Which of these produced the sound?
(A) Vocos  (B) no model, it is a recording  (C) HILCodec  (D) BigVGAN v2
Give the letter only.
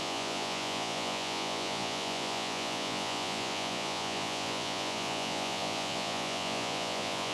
A